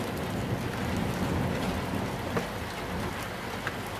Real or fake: real